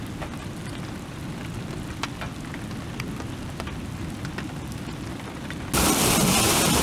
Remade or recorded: recorded